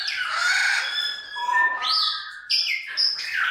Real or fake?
real